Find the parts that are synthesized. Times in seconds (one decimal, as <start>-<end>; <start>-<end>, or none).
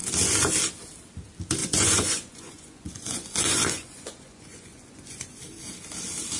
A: 1.6-5.4